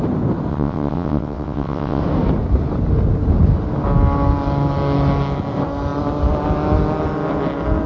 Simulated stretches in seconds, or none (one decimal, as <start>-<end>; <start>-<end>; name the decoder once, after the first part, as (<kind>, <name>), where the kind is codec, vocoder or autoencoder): 0.5-2.0 (vocoder, WaveNeXt)